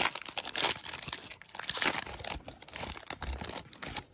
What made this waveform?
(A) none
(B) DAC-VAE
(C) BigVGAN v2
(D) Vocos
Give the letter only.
A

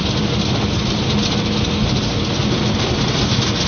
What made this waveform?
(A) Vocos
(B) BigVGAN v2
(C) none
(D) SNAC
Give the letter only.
C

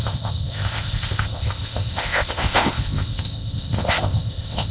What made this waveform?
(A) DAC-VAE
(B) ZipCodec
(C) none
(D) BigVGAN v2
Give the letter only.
B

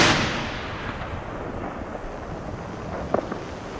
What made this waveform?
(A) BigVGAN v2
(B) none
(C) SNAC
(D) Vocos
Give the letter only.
B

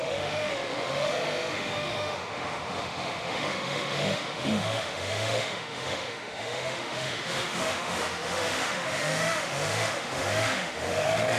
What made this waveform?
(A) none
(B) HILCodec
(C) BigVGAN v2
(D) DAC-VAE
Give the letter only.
D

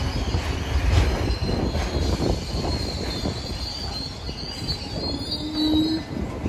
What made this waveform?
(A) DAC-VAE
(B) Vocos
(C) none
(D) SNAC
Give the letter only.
C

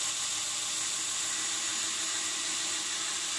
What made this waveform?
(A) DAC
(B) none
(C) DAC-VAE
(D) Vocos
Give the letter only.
B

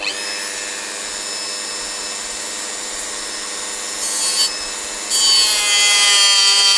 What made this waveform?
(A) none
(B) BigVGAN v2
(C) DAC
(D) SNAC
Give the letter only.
A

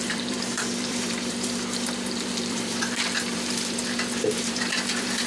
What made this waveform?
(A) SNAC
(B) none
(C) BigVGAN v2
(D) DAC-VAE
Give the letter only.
C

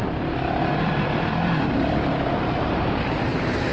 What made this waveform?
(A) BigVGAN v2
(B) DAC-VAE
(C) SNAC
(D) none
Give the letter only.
A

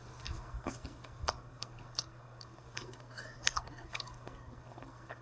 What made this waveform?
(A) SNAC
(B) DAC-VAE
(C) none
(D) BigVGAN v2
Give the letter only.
A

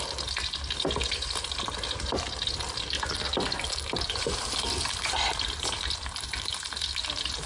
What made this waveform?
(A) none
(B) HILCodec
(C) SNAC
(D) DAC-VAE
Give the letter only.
A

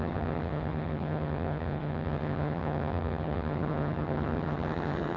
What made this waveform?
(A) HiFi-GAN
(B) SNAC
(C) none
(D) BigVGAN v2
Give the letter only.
A